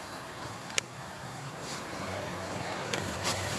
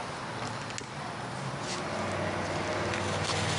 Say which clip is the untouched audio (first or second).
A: second